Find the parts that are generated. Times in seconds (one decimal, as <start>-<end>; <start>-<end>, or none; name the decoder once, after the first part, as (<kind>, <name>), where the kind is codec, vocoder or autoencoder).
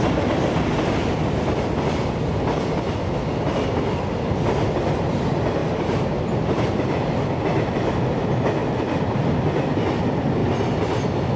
2.3-2.9 (vocoder, BigVGAN v2); 5.6-7.1; 8.6-9.3